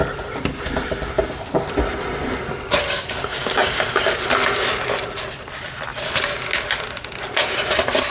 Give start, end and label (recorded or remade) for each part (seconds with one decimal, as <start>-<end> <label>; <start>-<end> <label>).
0.0-3.3 recorded; 3.3-3.8 remade; 3.8-8.1 recorded